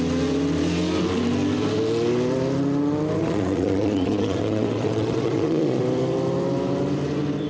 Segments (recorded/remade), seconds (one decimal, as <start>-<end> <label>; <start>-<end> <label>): 0.0-3.2 recorded; 3.2-5.8 remade; 5.8-7.5 recorded